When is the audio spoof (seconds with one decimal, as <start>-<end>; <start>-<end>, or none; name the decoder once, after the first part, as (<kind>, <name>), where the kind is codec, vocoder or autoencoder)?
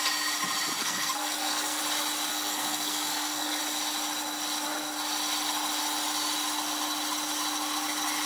0.8-1.8 (codec, SNAC); 2.3-3.6